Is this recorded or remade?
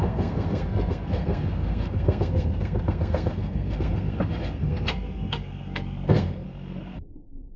remade